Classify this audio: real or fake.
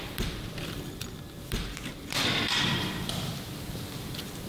fake